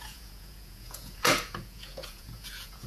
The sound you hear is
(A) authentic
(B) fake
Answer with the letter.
B